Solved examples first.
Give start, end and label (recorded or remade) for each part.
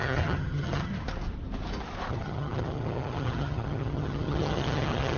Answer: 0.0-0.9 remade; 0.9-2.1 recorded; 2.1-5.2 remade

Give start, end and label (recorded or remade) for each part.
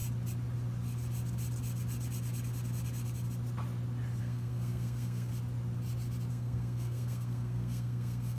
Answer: 0.0-4.2 recorded; 4.2-5.3 remade; 5.3-6.3 recorded; 6.3-8.4 remade